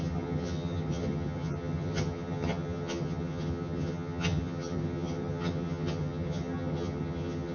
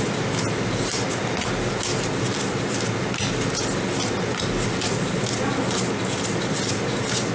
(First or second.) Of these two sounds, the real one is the second